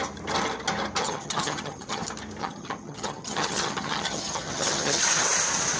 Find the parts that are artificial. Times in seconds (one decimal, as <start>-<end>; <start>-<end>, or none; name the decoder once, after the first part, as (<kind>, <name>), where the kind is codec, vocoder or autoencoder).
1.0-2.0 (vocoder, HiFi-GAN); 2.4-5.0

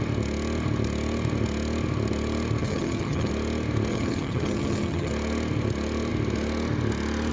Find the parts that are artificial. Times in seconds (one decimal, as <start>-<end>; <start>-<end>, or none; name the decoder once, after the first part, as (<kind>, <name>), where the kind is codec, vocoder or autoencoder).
2.6-3.3 (vocoder, HiFi-GAN); 3.9-5.1

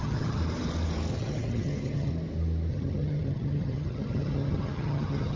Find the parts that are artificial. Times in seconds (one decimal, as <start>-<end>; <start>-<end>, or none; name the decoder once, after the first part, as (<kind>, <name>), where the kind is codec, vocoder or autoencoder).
0.0-0.4 (vocoder, HiFi-GAN); 1.1-2.1; 2.7-5.4

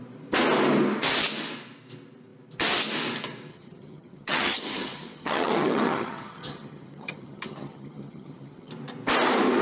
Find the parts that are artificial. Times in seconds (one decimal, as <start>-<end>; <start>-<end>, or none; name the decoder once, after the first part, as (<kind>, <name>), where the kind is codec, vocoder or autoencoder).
3.5-8.7 (vocoder, HiFi-GAN)

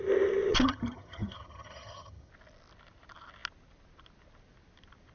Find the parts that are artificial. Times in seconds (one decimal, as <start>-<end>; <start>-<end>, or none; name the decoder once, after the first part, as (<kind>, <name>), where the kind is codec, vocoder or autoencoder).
0.5-2.3 (vocoder, HiFi-GAN)

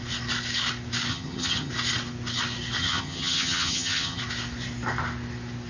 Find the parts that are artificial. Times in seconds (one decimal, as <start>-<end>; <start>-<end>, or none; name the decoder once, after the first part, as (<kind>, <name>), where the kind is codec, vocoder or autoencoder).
1.1-1.7 (vocoder, HiFi-GAN); 2.8-4.2